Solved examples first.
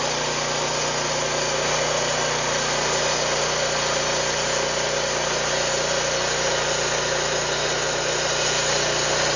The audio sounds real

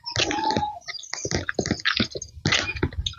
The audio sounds real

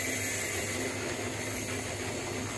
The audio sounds real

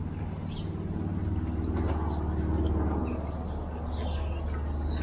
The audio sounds real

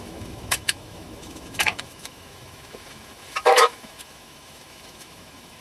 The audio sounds fake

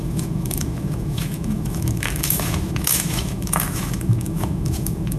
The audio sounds fake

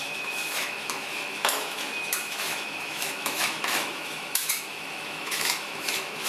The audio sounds fake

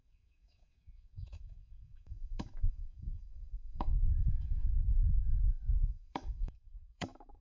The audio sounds fake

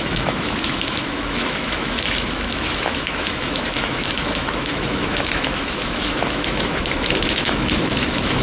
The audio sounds fake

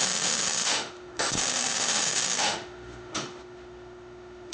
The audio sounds fake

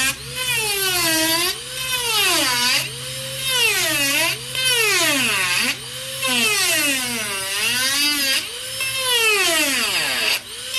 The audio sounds real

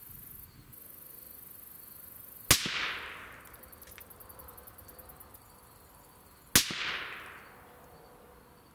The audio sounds real